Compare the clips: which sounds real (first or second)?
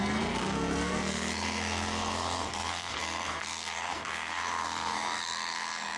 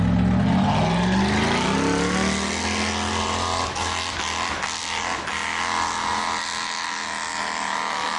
second